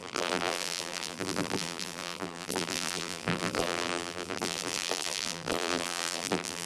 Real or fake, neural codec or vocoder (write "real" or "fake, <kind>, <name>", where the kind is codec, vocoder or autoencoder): fake, vocoder, BigVGAN v2